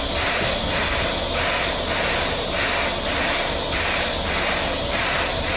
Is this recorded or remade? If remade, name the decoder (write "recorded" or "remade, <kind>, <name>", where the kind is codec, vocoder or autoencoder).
recorded